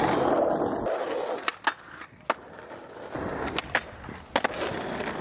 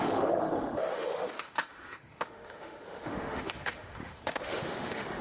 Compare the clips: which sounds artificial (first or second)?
second